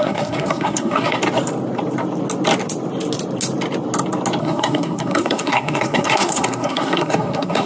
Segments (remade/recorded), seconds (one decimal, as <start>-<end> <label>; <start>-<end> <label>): 0.0-1.2 remade; 1.2-4.4 recorded; 4.4-7.7 remade